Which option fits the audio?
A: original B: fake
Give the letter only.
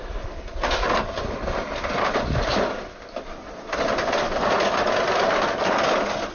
A